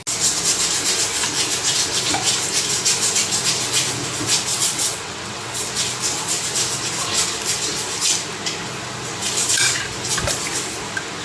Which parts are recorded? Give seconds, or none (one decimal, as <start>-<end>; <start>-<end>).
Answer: 0.0-4.5; 5.7-11.2